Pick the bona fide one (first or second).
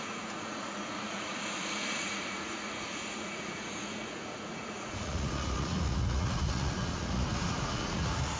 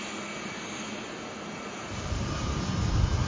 second